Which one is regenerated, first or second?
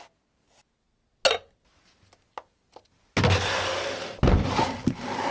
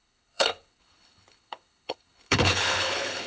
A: second